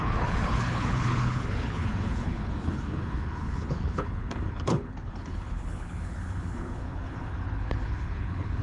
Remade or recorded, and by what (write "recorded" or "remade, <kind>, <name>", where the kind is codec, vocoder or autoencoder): remade, codec, HILCodec